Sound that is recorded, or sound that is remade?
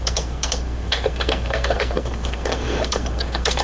remade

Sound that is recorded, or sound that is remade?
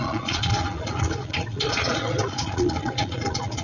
remade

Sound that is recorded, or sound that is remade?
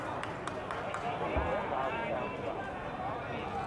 recorded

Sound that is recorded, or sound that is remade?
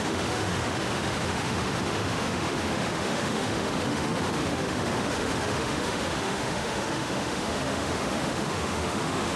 remade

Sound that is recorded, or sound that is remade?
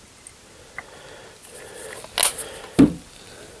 recorded